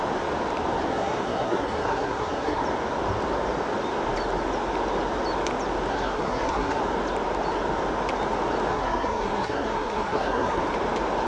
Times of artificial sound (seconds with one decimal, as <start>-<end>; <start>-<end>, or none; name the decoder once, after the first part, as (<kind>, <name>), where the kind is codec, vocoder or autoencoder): 0.9-2.6 (codec, SNAC); 5.9-6.8; 8.7-10.6